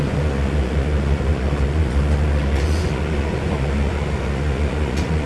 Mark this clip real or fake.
fake